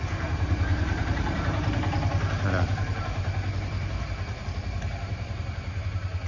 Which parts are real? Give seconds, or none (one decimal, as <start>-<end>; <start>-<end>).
0.0-0.7; 4.4-6.3